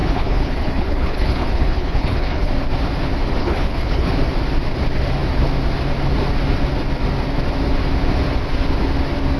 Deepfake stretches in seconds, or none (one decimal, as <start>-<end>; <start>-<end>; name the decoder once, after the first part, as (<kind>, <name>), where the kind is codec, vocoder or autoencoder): 0.0-2.5 (codec, HILCodec); 3.4-4.1